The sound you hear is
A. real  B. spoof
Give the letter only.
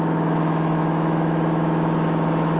B